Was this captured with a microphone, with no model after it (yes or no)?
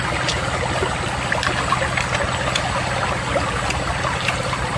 yes